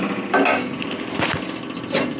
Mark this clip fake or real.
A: real